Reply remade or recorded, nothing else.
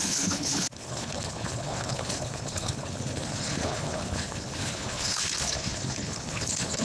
remade